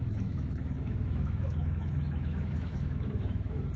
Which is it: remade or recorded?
remade